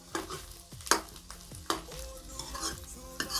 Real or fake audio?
real